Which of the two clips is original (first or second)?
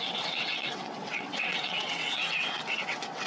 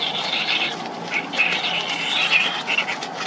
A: second